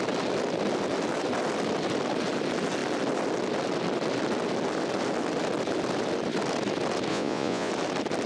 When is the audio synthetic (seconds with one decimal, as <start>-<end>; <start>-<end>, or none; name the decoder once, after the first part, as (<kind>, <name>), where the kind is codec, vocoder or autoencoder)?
7.1-7.7 (vocoder, Vocos)